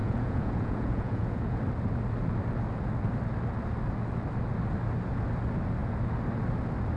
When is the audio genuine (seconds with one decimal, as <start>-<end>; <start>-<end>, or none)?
1.6-7.0